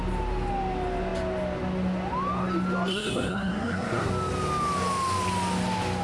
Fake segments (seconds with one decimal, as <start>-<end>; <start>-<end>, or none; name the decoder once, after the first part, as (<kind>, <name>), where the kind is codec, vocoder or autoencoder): 2.9-4.1 (codec, SNAC)